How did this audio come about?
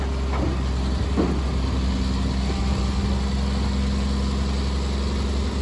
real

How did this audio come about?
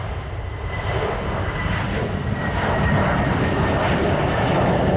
real